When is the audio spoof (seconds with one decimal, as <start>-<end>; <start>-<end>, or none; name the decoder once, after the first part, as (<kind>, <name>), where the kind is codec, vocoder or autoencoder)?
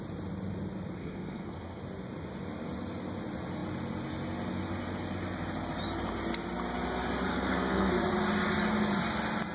1.0-1.8 (codec, SNAC); 7.3-7.9